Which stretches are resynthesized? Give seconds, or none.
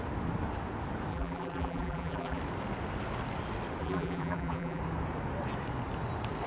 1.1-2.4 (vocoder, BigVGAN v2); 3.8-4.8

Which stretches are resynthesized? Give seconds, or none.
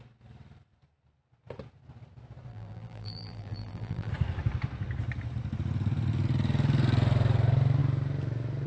2.5-4.1 (vocoder, BigVGAN v2)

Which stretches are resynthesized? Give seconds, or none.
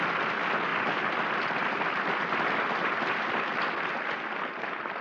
none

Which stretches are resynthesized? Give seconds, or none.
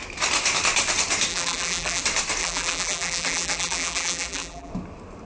1.3-2.0 (vocoder, BigVGAN v2); 2.4-4.7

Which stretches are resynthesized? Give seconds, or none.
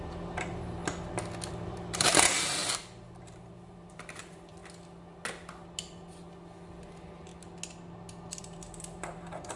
0.0-0.8 (vocoder, BigVGAN v2); 1.5-4.6; 6.8-7.3; 8.4-9.6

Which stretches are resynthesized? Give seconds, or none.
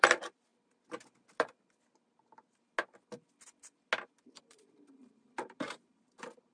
0.0-0.5 (vocoder, BigVGAN v2); 4.4-6.5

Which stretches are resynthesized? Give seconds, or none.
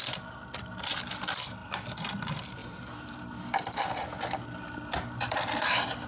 1.6-2.2 (vocoder, BigVGAN v2); 2.6-3.2